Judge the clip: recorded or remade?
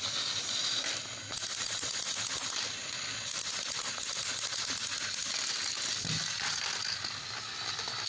recorded